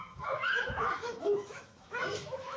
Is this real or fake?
fake